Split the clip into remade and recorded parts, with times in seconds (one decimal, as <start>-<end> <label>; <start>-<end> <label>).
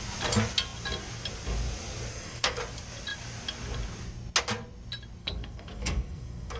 0.0-2.1 recorded; 2.1-2.6 remade; 2.6-5.2 recorded; 5.2-6.6 remade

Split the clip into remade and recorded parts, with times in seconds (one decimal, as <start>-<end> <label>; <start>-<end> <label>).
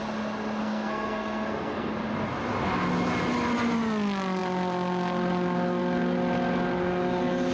0.0-0.6 recorded; 0.6-1.9 remade; 1.9-7.5 recorded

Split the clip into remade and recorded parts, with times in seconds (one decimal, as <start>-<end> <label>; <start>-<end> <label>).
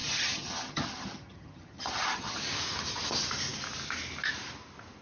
0.0-2.4 remade; 2.4-5.0 recorded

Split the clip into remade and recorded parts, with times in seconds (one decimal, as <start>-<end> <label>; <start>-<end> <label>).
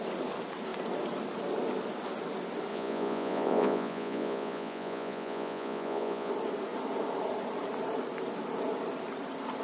0.0-2.7 recorded; 2.7-6.3 remade; 6.3-9.6 recorded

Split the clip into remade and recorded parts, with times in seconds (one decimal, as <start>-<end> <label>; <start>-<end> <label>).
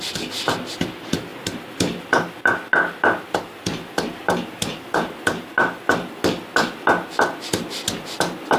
0.0-1.3 recorded; 1.3-2.5 remade; 2.5-8.6 recorded